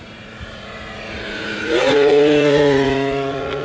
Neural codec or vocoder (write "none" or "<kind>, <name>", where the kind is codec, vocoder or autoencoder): vocoder, Vocos